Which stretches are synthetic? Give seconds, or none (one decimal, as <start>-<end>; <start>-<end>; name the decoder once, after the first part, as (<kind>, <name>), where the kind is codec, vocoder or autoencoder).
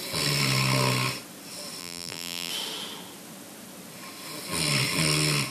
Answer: 1.8-2.5 (vocoder, BigVGAN v2)